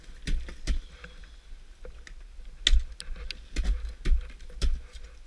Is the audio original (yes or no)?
yes